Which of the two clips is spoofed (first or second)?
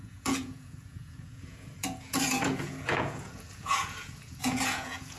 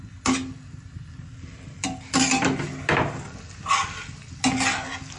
first